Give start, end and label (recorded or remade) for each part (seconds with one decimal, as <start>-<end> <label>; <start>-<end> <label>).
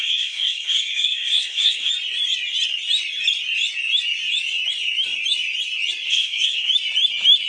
0.0-1.9 remade; 1.9-6.1 recorded; 6.1-6.7 remade; 6.7-7.5 recorded